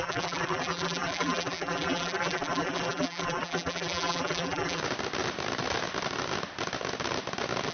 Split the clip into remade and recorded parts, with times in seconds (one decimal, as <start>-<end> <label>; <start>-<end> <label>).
0.0-4.8 remade; 4.8-7.7 recorded